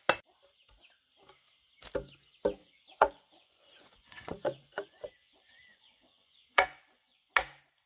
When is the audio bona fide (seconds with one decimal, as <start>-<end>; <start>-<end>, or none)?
0.0-2.6; 7.3-7.9